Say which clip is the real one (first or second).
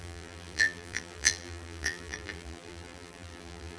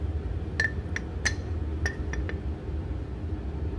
second